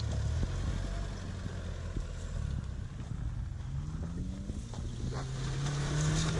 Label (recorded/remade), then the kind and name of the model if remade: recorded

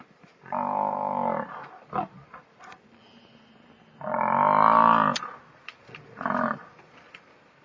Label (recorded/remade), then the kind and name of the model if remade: recorded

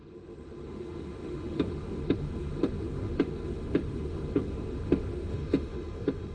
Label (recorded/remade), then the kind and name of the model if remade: remade, autoencoder, DAC-VAE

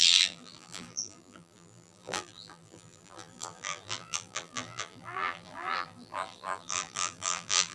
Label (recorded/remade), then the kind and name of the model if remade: remade, vocoder, BigVGAN v2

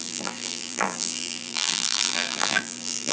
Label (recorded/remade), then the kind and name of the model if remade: remade, vocoder, BigVGAN v2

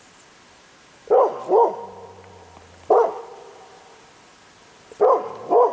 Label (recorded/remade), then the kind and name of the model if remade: recorded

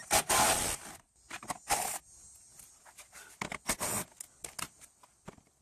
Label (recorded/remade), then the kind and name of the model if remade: recorded